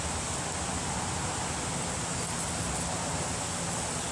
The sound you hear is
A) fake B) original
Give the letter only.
B